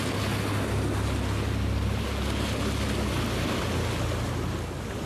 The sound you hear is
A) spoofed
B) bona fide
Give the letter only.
B